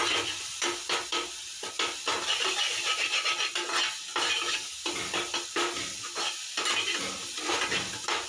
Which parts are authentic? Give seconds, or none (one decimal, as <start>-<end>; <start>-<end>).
0.0-8.3